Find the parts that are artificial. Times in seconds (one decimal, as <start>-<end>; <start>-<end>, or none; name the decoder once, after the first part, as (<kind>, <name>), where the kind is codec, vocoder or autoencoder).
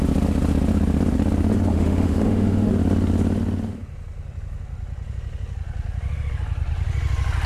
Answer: 1.7-2.7 (autoencoder, DAC-VAE)